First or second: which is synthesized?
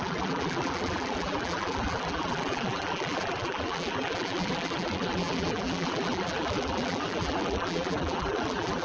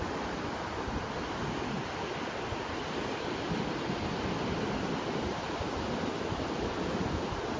first